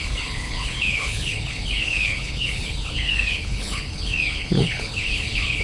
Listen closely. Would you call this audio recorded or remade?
remade